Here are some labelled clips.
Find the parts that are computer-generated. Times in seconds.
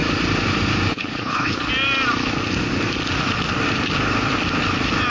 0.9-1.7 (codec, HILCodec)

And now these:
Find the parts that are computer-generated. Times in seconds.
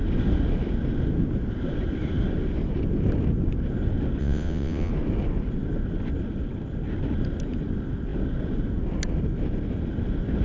4.2-4.9 (vocoder, WaveNeXt)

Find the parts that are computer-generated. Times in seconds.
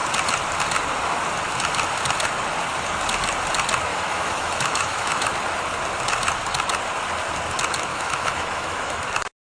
3.9-5.3 (autoencoder, DAC-VAE); 7.9-9.0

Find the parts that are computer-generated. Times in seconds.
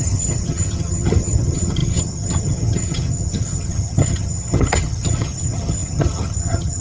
0.0-6.8 (vocoder, HiFi-GAN)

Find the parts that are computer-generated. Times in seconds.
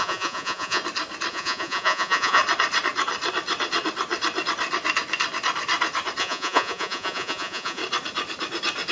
0.0-0.8 (vocoder, Vocos); 1.3-2.4; 6.2-7.8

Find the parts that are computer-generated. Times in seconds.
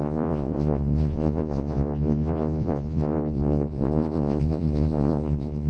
0.0-5.7 (vocoder, Vocos)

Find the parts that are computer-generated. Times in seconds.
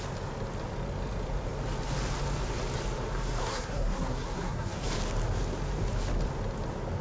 3.4-4.9 (codec, SNAC)